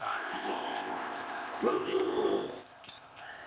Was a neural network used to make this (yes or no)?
yes